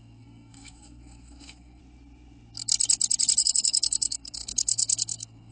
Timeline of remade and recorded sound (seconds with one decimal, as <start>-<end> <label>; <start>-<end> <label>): 0.0-1.8 remade; 1.8-3.4 recorded; 3.4-5.5 remade